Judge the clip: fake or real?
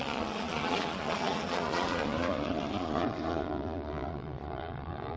fake